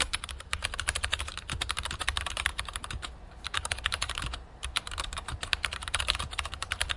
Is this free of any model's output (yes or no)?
no